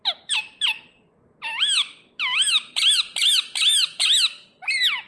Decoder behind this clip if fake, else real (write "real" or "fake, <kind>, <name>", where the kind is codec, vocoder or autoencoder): real